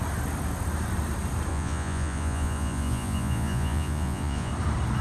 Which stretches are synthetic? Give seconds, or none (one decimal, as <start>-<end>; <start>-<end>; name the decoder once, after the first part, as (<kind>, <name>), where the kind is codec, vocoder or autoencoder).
1.5-4.5 (vocoder, Vocos)